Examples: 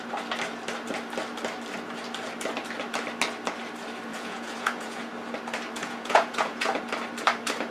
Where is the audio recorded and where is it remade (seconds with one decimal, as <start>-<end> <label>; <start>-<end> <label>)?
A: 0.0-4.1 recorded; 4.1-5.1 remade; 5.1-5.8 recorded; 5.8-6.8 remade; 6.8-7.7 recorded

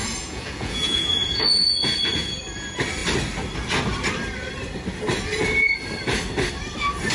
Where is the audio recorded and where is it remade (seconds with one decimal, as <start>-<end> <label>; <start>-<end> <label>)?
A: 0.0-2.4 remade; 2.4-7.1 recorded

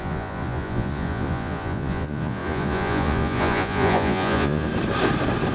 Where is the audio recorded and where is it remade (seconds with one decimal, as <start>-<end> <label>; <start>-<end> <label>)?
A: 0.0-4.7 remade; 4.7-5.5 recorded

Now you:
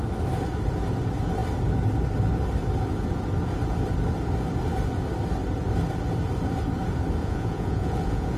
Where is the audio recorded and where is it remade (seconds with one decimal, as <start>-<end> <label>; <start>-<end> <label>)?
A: 0.0-7.2 recorded; 7.2-8.4 remade

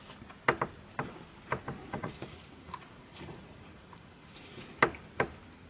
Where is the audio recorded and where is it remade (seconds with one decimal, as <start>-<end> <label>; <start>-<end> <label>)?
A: 0.0-1.8 recorded; 1.8-4.7 remade; 4.7-5.7 recorded

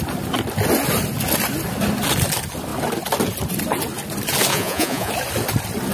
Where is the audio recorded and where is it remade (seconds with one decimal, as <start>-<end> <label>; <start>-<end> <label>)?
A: 0.0-4.5 recorded; 4.5-5.1 remade; 5.1-5.9 recorded